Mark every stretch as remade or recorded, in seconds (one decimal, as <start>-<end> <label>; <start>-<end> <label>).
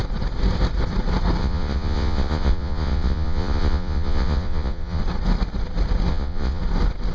0.0-1.4 recorded; 1.4-5.0 remade; 5.0-6.1 recorded; 6.1-6.6 remade; 6.6-7.1 recorded